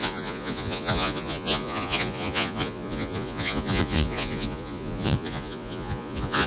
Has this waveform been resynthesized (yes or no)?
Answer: yes